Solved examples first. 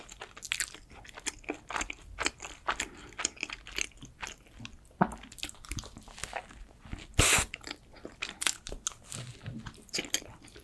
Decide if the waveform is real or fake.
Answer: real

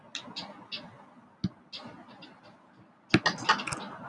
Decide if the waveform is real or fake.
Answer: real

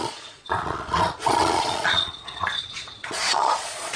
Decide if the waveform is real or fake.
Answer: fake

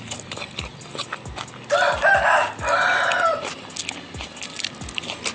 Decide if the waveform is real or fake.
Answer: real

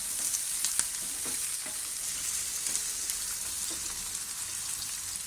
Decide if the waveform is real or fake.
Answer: real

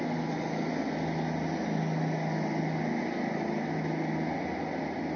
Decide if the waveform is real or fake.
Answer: real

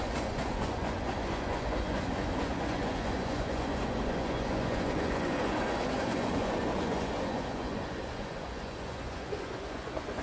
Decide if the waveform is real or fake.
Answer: fake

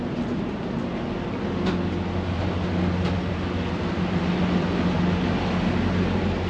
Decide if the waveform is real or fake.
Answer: real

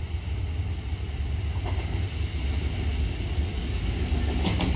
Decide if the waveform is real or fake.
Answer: real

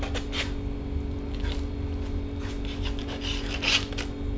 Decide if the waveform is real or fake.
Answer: real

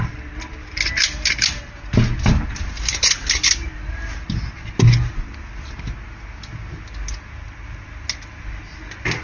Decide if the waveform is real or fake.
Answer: real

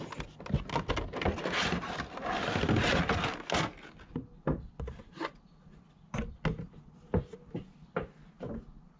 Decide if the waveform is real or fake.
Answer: real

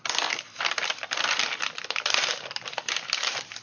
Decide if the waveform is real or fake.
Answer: fake